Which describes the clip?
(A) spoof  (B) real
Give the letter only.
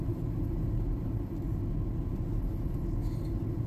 B